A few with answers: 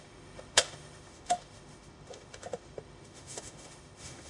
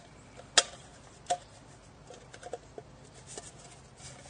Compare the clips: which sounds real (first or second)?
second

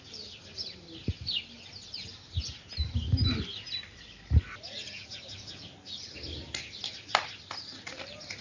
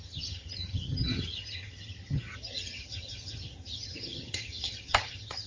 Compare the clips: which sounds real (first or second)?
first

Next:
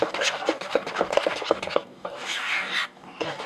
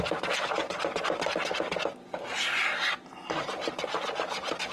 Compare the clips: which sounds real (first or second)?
second